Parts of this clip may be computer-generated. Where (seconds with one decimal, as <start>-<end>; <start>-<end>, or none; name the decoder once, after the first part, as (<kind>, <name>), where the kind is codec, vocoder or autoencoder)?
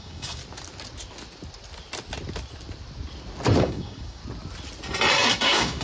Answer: 0.0-0.4 (codec, DAC); 3.6-4.2; 5.3-5.8